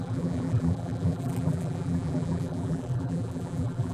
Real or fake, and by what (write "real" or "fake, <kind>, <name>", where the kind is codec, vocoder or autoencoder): fake, vocoder, BigVGAN v2